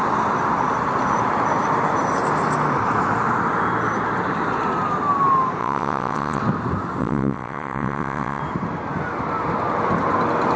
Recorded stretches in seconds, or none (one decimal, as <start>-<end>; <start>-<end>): 0.0-5.6; 6.4-7.0; 8.4-10.6